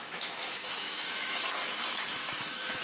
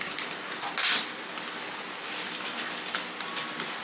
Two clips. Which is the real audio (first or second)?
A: second